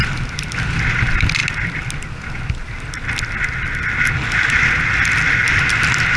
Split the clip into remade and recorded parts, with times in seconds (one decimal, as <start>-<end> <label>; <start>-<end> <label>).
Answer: 0.0-6.2 recorded